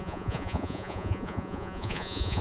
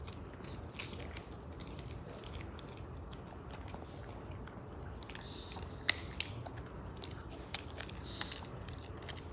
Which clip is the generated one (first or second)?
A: first